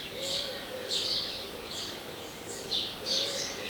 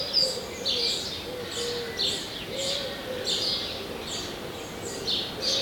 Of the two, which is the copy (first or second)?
first